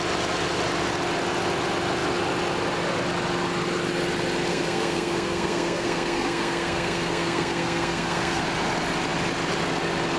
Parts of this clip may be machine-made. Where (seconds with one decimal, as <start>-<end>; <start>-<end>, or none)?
4.5-8.4